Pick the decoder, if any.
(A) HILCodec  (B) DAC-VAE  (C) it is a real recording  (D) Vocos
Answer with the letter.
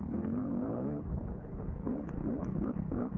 A